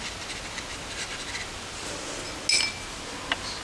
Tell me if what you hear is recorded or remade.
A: recorded